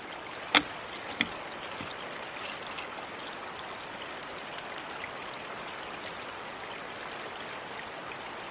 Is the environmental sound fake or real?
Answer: real